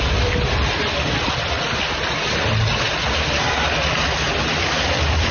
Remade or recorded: recorded